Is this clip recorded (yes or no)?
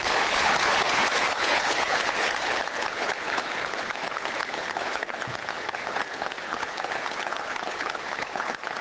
no